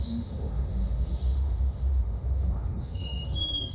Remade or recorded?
remade